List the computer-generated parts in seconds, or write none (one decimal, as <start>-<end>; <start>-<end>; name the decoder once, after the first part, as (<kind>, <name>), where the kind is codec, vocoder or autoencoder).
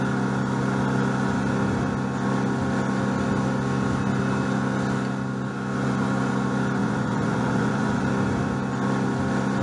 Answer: 6.8-8.0 (vocoder, Vocos)